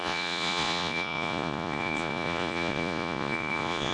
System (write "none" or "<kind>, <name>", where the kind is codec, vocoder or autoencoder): vocoder, Vocos